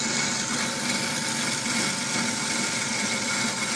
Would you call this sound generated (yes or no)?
no